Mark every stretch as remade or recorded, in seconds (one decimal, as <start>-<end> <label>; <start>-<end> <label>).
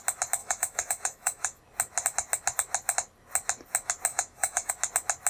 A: 0.0-0.4 recorded; 0.4-1.6 remade; 1.6-4.1 recorded; 4.1-4.7 remade; 4.7-5.3 recorded